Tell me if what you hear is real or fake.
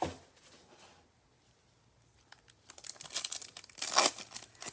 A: real